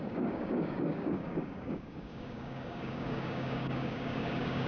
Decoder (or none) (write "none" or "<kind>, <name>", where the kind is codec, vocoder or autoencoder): codec, DAC